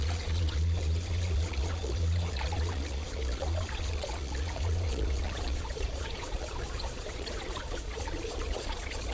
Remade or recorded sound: remade